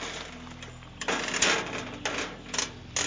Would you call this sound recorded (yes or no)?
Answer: yes